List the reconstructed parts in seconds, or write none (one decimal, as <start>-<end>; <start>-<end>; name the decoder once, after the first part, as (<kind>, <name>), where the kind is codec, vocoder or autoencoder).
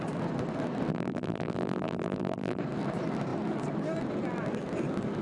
0.9-2.6 (vocoder, BigVGAN v2)